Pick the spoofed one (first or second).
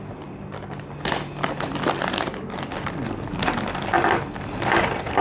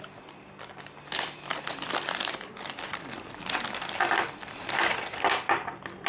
second